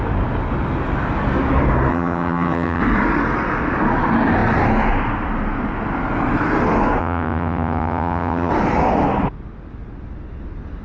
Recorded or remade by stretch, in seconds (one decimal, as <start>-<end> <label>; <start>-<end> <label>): 0.0-1.9 recorded; 1.9-2.8 remade; 2.8-7.0 recorded; 7.0-8.5 remade; 8.5-10.8 recorded